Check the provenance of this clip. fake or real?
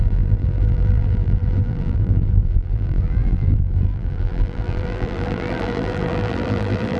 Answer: fake